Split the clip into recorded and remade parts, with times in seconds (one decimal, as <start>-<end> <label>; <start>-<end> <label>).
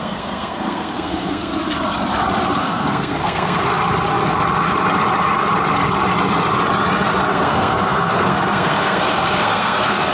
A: 0.0-1.5 remade; 1.5-2.6 recorded; 2.6-3.7 remade; 3.7-7.3 recorded; 7.3-10.1 remade